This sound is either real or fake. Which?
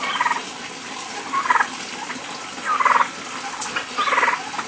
real